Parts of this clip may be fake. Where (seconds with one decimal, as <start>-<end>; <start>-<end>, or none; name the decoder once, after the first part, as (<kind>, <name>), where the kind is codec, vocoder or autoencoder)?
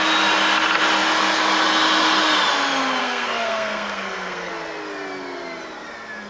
3.0-4.5 (codec, SNAC)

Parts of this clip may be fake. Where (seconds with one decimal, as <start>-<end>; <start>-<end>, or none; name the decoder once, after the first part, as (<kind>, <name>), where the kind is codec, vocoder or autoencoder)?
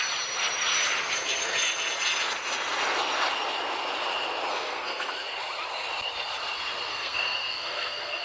4.5-5.1 (codec, SNAC); 6.9-8.2